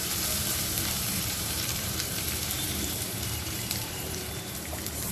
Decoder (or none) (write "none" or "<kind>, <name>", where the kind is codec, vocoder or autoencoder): vocoder, BigVGAN v2